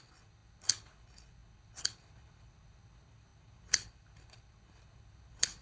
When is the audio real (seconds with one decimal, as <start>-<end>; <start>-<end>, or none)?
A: none

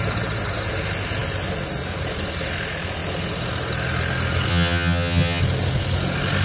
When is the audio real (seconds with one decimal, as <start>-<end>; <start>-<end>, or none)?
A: 0.0-4.5; 5.4-6.4

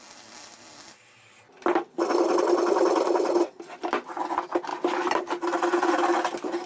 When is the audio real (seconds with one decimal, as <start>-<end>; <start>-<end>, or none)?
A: 0.0-6.7